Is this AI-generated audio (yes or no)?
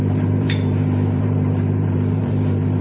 yes